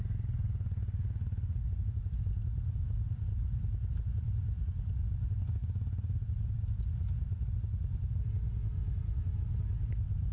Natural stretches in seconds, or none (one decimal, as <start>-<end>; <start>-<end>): 0.0-10.3